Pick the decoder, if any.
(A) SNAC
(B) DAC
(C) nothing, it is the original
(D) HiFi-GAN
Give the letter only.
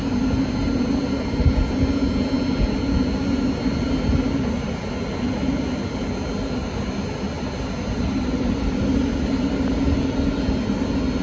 C